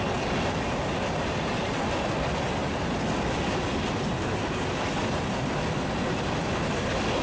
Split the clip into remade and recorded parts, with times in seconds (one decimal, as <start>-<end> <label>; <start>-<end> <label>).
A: 0.0-7.2 recorded